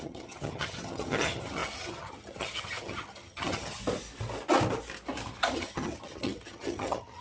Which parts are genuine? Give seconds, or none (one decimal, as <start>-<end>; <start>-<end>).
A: 3.8-5.5